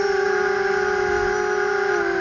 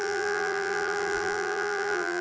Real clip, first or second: first